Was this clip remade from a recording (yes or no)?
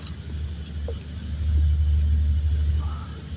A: no